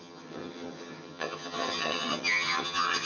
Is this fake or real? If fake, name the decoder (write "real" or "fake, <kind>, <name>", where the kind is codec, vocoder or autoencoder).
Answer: fake, vocoder, HiFi-GAN